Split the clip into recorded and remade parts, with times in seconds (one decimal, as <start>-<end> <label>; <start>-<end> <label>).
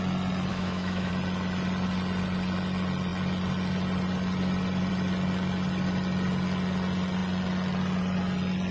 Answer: 0.0-0.5 recorded; 0.5-1.1 remade; 1.1-8.7 recorded